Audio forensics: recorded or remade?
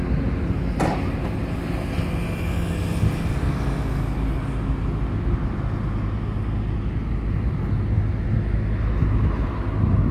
recorded